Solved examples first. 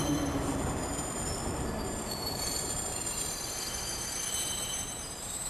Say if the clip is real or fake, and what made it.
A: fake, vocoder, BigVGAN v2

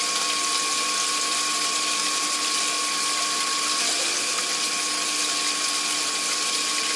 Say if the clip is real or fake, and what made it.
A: real